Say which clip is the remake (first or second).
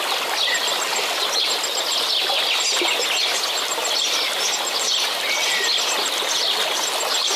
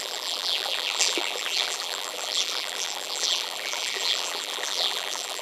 second